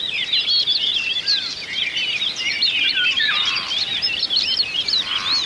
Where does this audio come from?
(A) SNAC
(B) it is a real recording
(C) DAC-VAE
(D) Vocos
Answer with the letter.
B